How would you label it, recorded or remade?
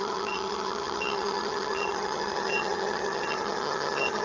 remade